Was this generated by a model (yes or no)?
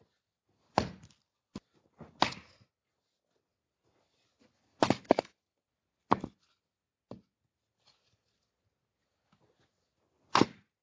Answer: no